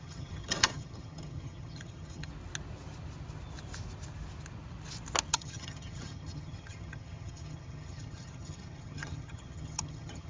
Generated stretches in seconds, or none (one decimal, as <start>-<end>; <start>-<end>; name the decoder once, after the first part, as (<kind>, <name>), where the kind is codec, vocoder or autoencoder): 0.0-2.3 (vocoder, HiFi-GAN); 5.3-10.3